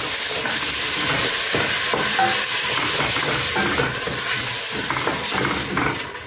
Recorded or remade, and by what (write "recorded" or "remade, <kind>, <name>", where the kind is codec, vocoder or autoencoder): recorded